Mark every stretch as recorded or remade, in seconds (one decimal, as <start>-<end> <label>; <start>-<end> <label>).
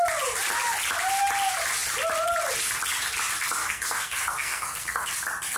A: 0.0-3.6 recorded; 3.6-5.1 remade; 5.1-5.6 recorded